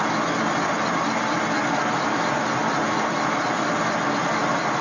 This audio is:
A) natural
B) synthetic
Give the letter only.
A